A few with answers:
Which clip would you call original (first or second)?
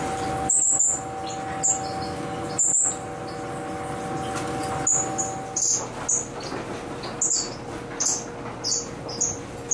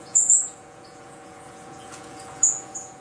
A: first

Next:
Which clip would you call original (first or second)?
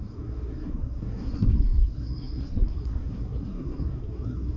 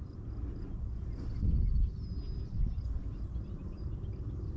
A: second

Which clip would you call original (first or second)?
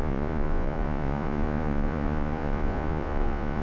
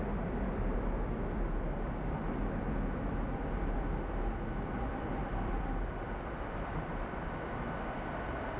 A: second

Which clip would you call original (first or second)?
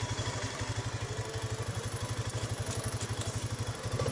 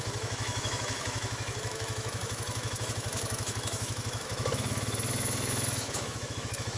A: first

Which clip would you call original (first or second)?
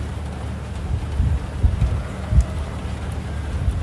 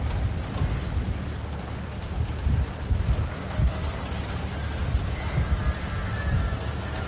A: first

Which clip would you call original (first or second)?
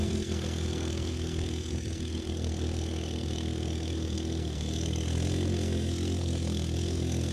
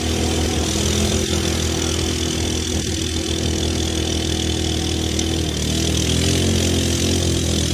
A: second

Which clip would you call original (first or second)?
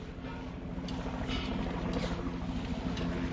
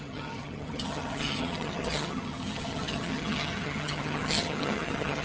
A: first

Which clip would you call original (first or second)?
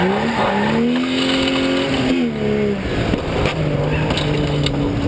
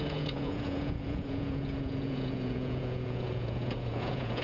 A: first